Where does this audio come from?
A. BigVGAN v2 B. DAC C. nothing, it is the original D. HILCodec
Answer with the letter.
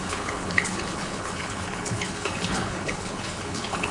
D